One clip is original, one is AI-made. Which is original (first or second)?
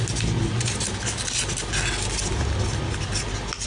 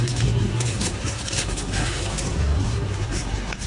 first